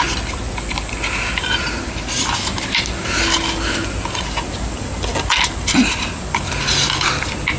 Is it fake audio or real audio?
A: real